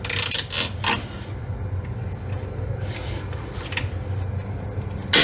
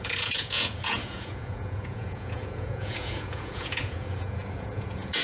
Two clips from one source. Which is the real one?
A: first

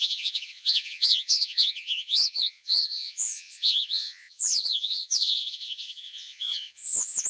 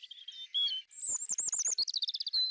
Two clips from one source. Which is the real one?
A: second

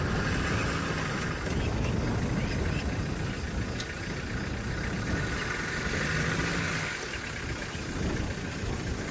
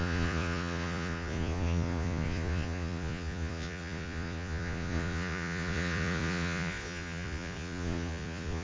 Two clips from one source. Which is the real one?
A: first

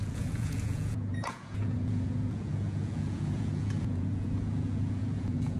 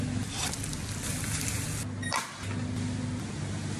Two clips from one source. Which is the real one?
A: second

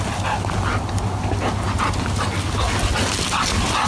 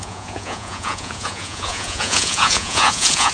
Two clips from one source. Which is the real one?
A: first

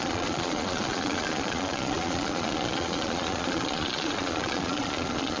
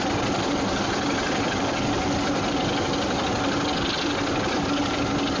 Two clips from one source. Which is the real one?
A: second